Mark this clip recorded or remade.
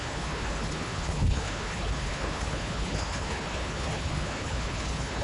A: remade